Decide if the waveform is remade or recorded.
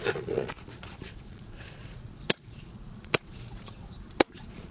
remade